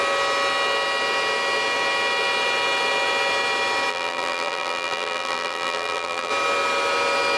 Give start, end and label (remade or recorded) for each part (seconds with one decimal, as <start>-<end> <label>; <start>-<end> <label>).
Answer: 0.0-3.9 recorded; 3.9-6.3 remade; 6.3-7.4 recorded

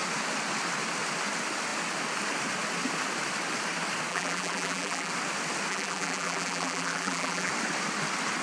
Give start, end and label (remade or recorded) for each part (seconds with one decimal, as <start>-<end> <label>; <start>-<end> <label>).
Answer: 0.0-4.1 recorded; 4.1-5.1 remade; 5.1-5.7 recorded; 5.7-7.5 remade; 7.5-8.4 recorded

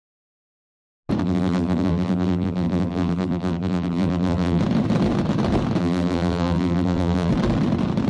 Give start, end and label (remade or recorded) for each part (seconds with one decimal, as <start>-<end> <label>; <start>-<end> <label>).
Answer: 0.0-1.2 recorded; 1.2-4.6 remade; 4.6-5.8 recorded; 5.8-7.3 remade; 7.3-8.1 recorded

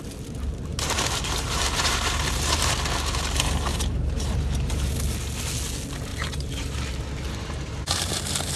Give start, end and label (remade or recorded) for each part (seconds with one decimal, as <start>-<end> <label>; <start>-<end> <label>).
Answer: 0.0-0.7 recorded; 0.7-2.7 remade; 2.7-3.7 recorded; 3.7-4.8 remade; 4.8-6.1 recorded; 6.1-8.2 remade; 8.2-8.6 recorded

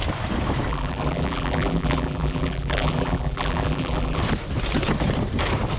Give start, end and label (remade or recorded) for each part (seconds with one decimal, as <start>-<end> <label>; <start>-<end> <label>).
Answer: 0.0-0.7 recorded; 0.7-4.2 remade; 4.2-5.8 recorded

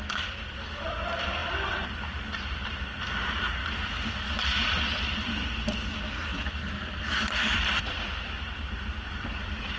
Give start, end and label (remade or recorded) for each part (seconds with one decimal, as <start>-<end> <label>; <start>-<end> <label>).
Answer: 0.0-3.6 remade; 3.6-4.1 recorded; 4.1-9.8 remade

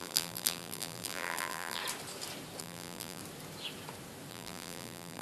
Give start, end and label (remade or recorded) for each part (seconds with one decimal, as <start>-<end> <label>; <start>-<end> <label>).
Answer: 0.0-1.8 remade; 1.8-2.6 recorded; 2.6-3.2 remade; 3.2-4.3 recorded; 4.3-5.2 remade

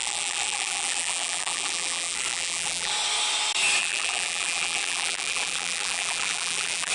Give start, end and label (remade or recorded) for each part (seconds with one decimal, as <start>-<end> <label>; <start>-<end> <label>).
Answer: 0.0-2.9 remade; 2.9-3.8 recorded; 3.8-6.9 remade